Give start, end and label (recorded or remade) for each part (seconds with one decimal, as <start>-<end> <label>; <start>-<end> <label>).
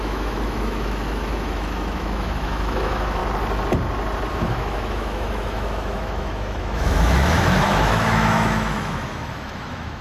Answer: 0.0-3.2 remade; 3.2-4.3 recorded; 4.3-10.0 remade